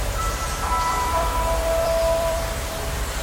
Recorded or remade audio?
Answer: remade